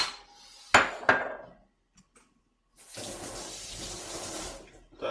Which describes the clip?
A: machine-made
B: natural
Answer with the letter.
B